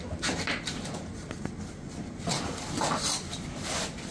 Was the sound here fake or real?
real